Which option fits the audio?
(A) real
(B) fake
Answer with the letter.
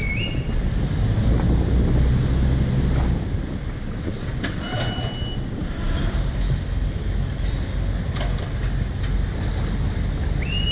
A